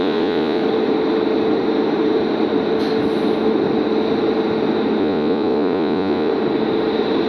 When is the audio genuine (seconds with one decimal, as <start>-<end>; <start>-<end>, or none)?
0.6-5.0; 6.3-7.3